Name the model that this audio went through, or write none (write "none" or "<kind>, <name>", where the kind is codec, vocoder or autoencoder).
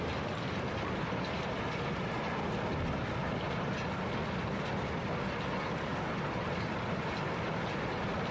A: none